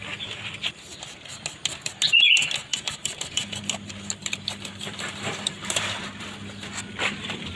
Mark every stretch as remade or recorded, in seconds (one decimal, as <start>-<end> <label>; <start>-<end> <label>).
0.0-2.7 recorded; 2.7-3.6 remade; 3.6-4.2 recorded; 4.2-6.0 remade; 6.0-7.6 recorded